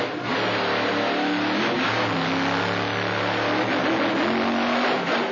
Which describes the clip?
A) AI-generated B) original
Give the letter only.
B